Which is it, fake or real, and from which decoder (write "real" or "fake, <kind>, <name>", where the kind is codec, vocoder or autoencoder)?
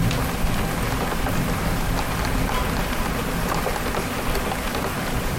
fake, vocoder, BigVGAN v2